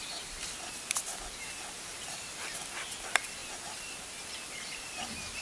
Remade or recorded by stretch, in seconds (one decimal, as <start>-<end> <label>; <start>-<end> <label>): 0.0-1.1 recorded; 1.1-2.4 remade; 2.4-5.4 recorded